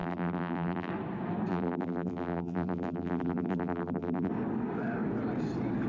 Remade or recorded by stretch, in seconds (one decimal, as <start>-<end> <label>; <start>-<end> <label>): 0.0-0.9 remade; 0.9-1.5 recorded; 1.5-4.3 remade; 4.3-5.9 recorded